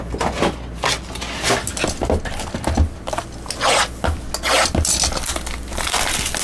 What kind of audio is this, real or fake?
real